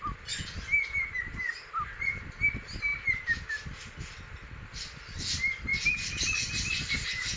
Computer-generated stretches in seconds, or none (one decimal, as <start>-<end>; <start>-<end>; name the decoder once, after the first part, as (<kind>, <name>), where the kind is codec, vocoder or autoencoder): none